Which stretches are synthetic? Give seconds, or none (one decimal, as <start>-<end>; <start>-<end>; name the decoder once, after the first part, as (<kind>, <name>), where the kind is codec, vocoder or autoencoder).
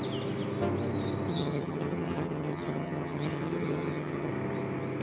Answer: 1.3-4.3 (vocoder, HiFi-GAN)